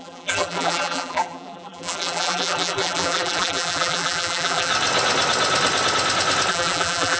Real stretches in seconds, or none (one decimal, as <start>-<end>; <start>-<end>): 4.7-6.5